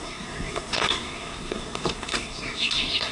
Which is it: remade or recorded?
remade